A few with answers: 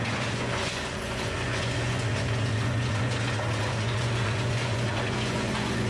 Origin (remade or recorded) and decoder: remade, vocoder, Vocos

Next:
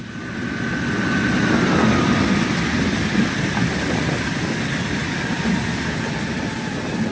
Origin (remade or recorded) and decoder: recorded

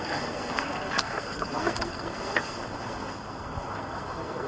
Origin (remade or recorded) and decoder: remade, codec, SNAC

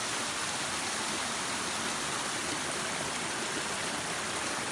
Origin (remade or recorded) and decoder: recorded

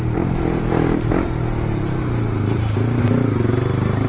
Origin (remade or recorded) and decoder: recorded